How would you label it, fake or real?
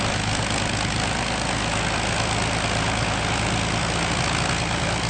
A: real